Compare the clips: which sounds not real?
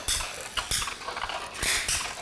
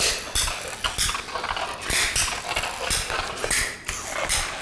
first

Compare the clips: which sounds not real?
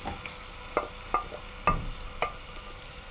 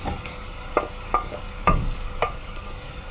second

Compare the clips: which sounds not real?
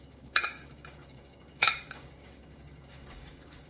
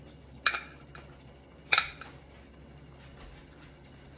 first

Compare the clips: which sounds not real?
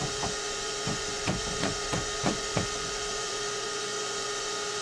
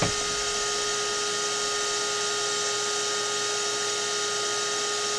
first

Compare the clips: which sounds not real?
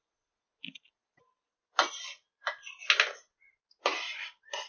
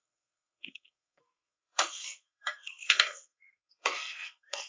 second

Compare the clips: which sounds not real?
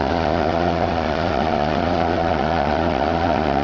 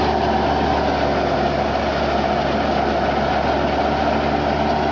first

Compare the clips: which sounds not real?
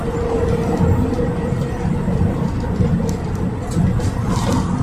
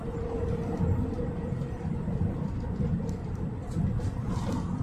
second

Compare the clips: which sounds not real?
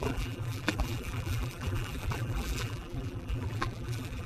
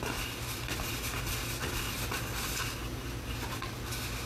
first